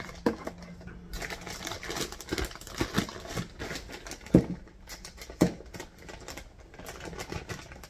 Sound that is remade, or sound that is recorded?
recorded